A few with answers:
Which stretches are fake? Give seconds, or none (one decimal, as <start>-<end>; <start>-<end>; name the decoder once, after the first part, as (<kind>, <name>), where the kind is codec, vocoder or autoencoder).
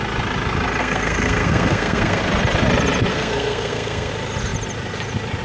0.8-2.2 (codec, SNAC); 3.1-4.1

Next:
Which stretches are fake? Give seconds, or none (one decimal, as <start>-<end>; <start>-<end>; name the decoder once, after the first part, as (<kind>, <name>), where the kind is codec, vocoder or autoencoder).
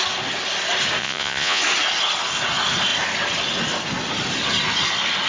1.0-1.6 (vocoder, Vocos)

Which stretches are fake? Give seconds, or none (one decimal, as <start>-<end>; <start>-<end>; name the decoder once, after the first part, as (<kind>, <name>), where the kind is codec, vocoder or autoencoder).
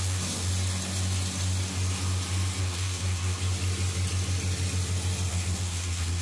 0.0-0.5 (codec, SNAC); 2.6-3.4; 5.3-6.2